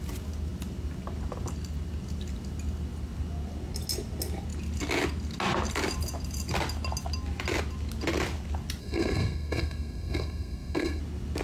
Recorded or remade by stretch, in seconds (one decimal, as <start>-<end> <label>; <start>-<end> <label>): 0.0-8.8 recorded; 8.8-11.0 remade; 11.0-11.4 recorded